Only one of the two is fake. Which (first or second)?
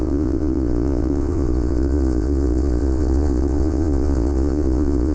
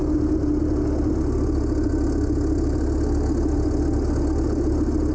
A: first